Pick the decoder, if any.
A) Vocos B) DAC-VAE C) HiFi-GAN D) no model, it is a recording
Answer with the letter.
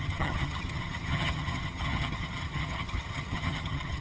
C